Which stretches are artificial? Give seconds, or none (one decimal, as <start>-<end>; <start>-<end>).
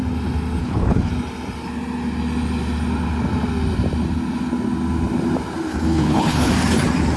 0.6-1.1; 5.7-6.5